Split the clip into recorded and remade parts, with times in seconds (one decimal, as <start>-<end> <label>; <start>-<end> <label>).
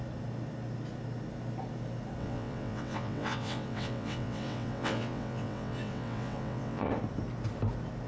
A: 0.0-2.2 recorded; 2.2-6.9 remade; 6.9-8.1 recorded